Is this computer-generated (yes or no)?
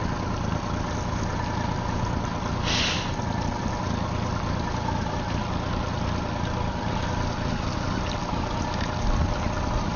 no